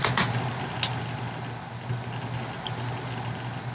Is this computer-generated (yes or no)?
no